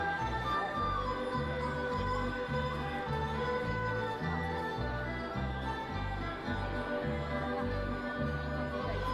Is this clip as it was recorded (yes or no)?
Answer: yes